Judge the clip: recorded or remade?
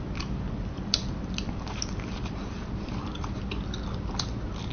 remade